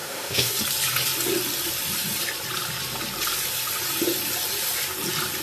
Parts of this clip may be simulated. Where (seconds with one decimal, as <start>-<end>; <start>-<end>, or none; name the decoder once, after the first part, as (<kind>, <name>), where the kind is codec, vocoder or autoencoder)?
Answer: 0.0-0.5 (autoencoder, DAC-VAE)